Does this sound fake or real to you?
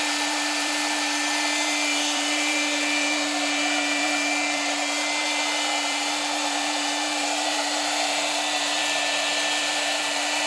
fake